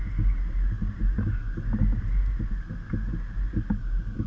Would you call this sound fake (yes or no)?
no